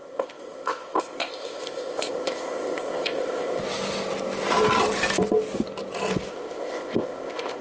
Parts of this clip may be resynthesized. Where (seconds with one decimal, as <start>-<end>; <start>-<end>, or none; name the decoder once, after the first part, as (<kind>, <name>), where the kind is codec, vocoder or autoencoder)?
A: 0.0-3.6 (codec, ZipCodec); 6.3-7.6